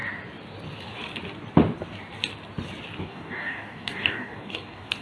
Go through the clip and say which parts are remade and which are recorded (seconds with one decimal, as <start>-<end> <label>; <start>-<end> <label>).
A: 0.0-3.0 recorded; 3.0-5.0 remade